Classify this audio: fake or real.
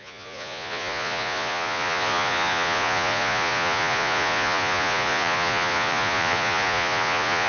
fake